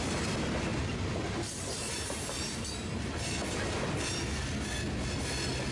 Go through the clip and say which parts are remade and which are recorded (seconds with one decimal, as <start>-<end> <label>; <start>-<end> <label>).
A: 0.0-0.7 recorded; 0.7-3.3 remade; 3.3-5.7 recorded